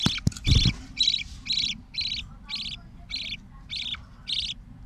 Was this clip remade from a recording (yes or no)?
no